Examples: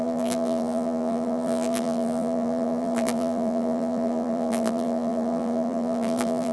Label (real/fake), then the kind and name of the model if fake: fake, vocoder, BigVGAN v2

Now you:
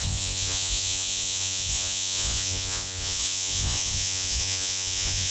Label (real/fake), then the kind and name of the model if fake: fake, vocoder, Vocos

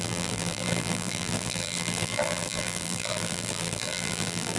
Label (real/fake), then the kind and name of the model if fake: fake, vocoder, BigVGAN v2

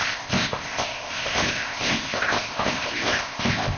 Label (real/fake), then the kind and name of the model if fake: fake, codec, ZipCodec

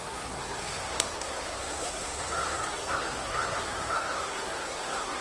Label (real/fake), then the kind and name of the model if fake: fake, codec, SNAC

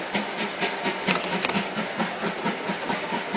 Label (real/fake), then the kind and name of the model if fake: real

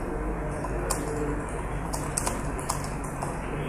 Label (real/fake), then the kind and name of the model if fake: real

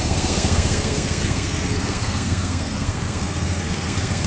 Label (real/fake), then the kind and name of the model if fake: fake, codec, SNAC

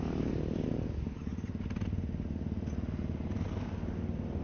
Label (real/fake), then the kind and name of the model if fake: real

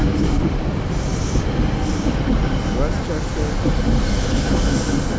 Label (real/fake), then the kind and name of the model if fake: real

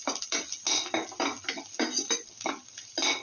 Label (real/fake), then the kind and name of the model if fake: real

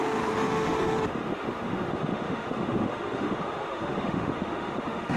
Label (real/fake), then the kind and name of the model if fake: fake, autoencoder, DAC-VAE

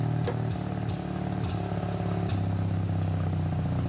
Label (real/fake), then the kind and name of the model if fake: real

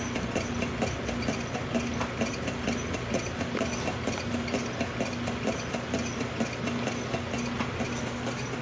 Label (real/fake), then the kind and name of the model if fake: real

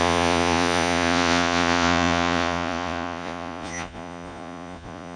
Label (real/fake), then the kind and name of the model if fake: fake, vocoder, Vocos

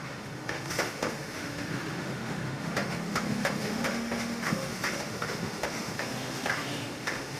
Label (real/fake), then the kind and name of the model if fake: fake, autoencoder, DAC-VAE